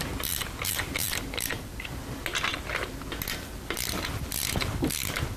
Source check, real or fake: fake